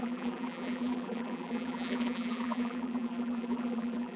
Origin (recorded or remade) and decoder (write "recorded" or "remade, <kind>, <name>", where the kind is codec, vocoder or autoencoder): remade, vocoder, BigVGAN v2